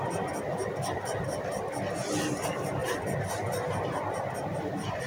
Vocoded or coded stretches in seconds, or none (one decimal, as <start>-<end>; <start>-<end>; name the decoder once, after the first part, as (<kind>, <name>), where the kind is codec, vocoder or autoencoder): none